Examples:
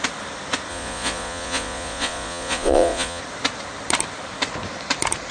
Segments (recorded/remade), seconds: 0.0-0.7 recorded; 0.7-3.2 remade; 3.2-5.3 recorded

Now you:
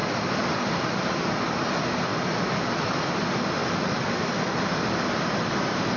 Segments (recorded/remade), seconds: 0.0-1.1 remade; 1.1-3.6 recorded; 3.6-4.9 remade; 4.9-6.0 recorded

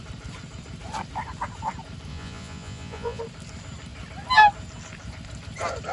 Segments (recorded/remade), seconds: 0.0-2.1 recorded; 2.1-3.2 remade; 3.2-5.9 recorded

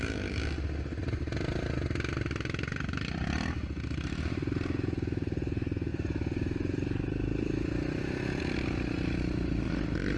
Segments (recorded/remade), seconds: 0.0-10.2 recorded

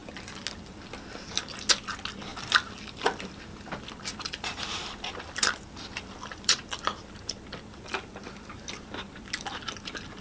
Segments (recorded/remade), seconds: 0.0-2.3 recorded; 2.3-7.3 remade; 7.3-10.2 recorded

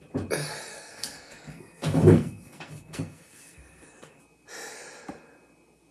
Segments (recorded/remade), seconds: 0.0-0.7 recorded; 0.7-4.2 remade; 4.2-5.9 recorded

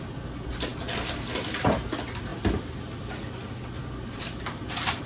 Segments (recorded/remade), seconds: 0.0-5.1 remade

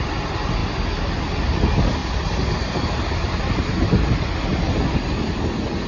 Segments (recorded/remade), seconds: 0.0-5.9 recorded